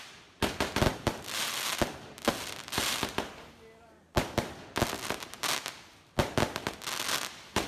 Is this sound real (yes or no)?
yes